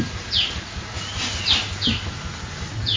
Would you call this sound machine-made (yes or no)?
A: no